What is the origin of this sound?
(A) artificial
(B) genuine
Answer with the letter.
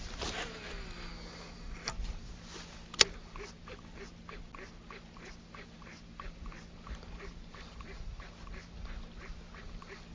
B